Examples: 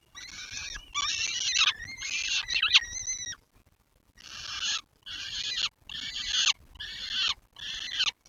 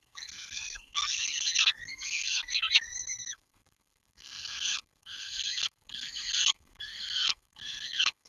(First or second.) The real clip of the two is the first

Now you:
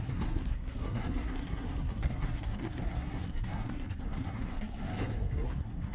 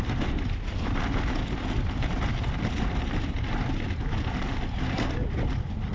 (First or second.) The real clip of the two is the second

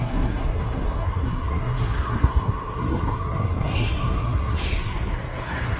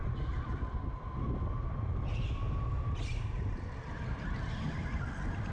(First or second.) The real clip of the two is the second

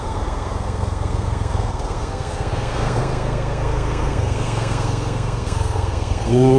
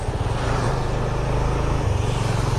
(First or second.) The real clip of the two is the second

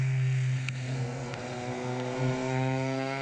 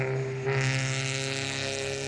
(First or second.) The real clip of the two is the second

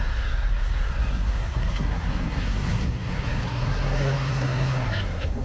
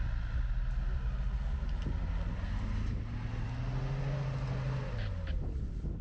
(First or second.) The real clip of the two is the second